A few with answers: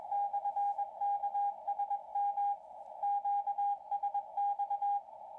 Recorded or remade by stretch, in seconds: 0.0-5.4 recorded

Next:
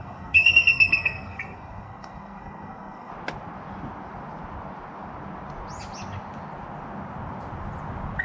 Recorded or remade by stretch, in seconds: 0.0-3.1 remade; 3.1-8.2 recorded